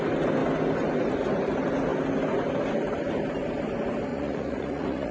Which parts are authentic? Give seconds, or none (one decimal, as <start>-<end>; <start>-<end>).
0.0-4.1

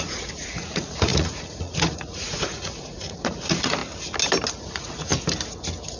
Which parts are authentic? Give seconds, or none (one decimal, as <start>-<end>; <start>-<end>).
3.8-4.6; 5.1-6.0

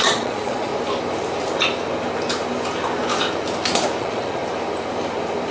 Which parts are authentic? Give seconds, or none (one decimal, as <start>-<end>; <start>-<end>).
0.7-4.0; 4.4-5.5

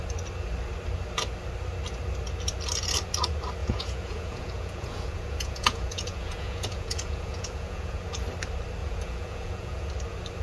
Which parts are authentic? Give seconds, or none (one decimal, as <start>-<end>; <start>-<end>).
0.0-3.6; 8.0-8.8; 9.9-10.4

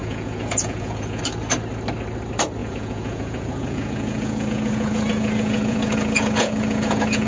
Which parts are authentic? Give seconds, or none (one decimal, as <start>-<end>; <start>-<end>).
1.2-2.6

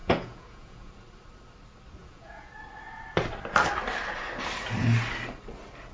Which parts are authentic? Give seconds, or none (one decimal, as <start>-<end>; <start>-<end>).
0.9-2.0; 2.5-5.9

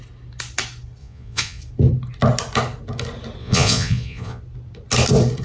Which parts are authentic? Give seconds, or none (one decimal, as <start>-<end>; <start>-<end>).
0.0-1.0; 1.6-3.4; 4.4-5.4